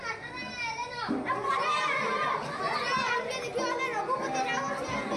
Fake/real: real